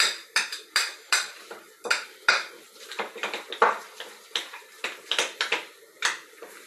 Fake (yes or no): yes